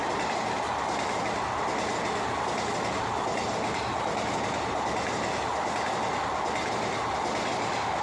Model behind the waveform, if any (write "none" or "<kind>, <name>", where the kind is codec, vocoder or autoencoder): none